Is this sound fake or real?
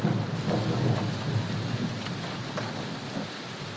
real